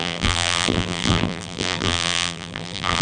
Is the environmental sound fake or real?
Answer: fake